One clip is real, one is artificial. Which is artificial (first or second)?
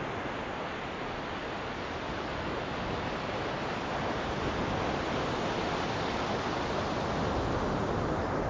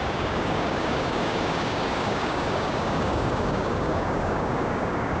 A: second